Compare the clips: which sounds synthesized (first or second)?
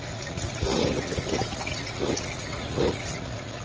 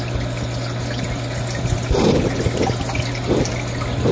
first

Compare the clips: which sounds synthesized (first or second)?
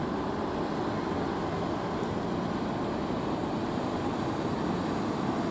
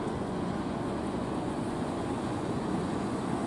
second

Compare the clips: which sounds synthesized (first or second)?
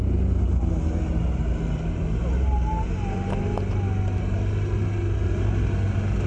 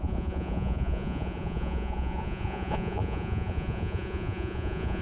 second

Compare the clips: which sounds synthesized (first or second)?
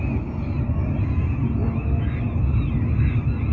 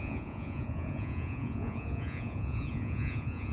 second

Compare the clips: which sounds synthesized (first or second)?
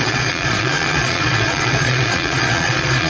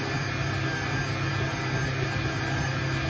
first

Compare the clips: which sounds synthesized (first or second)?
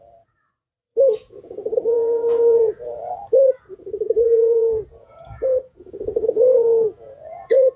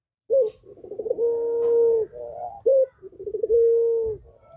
first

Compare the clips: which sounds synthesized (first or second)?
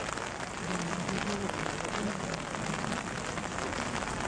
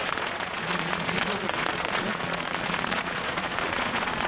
second